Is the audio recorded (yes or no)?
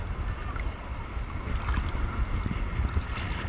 yes